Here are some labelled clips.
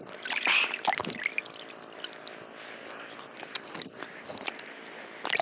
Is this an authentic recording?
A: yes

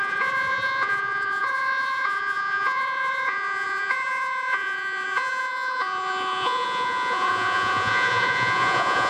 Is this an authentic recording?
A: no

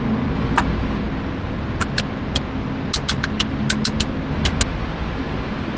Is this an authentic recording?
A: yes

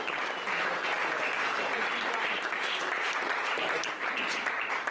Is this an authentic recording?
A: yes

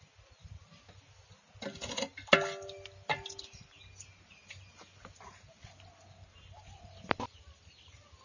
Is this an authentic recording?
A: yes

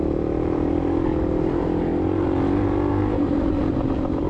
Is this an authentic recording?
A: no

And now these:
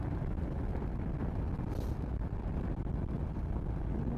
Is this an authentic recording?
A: yes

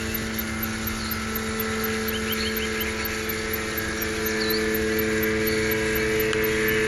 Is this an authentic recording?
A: yes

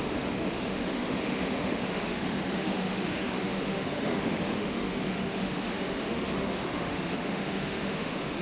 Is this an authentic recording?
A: no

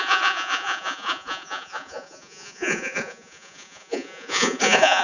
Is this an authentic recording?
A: no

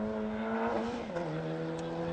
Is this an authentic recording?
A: yes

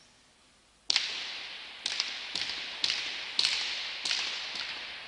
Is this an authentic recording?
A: yes